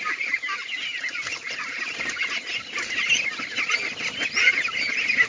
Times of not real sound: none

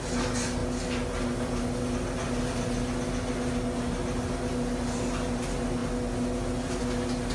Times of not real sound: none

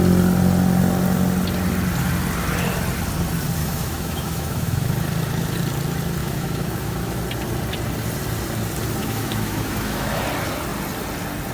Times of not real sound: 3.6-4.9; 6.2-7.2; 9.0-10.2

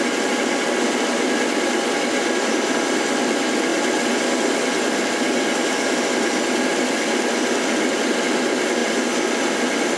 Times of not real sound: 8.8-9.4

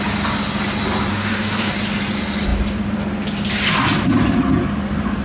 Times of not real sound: 1.1-1.7